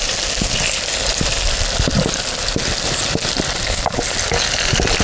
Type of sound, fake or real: real